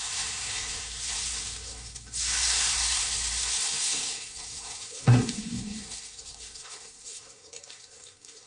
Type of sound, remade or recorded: remade